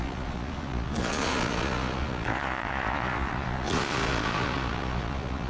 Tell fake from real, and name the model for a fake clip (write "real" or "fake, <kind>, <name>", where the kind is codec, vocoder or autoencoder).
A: fake, vocoder, Vocos